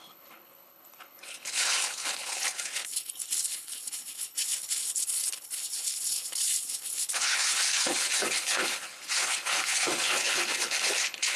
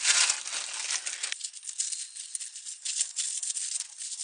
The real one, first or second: second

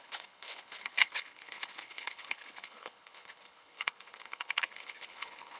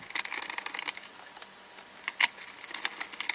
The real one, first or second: second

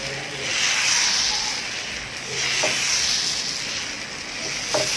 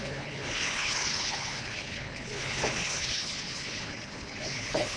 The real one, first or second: first